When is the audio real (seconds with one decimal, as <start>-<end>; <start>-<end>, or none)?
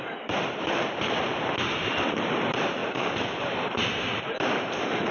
none